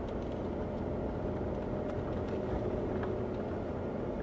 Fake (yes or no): no